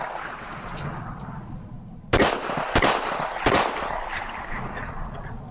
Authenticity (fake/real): real